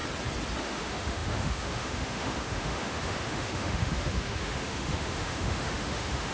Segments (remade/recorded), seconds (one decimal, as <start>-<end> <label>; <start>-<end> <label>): 0.0-0.6 recorded; 0.6-6.3 remade